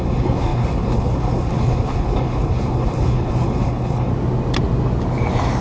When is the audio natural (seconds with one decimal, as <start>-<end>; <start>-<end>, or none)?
4.1-5.6